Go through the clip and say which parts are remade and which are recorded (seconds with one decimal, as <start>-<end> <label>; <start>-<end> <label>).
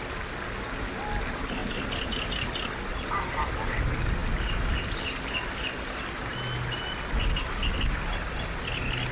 0.0-9.1 recorded